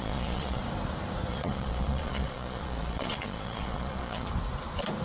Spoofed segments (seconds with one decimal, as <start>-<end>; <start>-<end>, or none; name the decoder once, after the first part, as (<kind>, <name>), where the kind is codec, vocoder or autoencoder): 0.0-0.6 (vocoder, Vocos); 1.3-4.3